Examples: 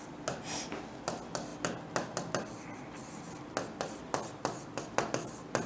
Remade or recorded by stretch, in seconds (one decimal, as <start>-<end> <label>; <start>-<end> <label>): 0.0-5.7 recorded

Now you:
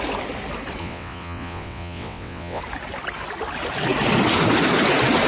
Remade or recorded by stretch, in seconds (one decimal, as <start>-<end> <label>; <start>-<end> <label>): 0.0-0.8 recorded; 0.8-2.6 remade; 2.6-5.3 recorded

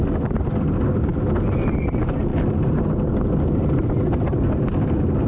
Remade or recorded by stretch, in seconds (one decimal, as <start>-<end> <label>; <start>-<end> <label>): 0.0-5.3 recorded

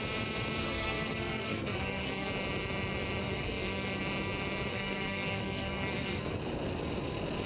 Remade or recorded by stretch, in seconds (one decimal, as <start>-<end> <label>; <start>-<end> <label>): 0.0-0.6 recorded; 0.6-2.3 remade; 2.3-3.2 recorded; 3.2-4.0 remade; 4.0-4.7 recorded; 4.7-6.3 remade; 6.3-7.5 recorded

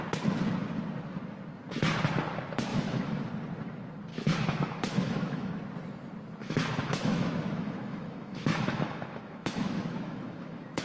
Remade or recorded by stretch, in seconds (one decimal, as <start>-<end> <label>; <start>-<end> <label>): 0.0-2.7 recorded; 2.7-3.3 remade; 3.3-4.1 recorded; 4.1-5.5 remade; 5.5-6.4 recorded; 6.4-10.8 remade

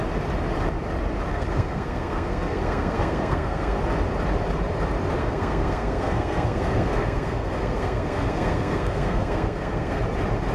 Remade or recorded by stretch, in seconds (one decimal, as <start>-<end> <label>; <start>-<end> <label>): 0.0-1.3 recorded; 1.3-3.8 remade; 3.8-5.2 recorded; 5.2-10.0 remade; 10.0-10.5 recorded

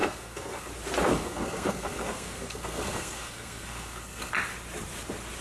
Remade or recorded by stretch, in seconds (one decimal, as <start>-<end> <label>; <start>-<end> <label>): 0.0-0.7 remade; 0.7-1.1 recorded; 1.1-4.3 remade; 4.3-5.4 recorded